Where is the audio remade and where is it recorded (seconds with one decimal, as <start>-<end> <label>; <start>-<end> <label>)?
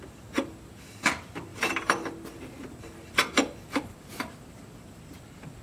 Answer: 0.0-5.6 remade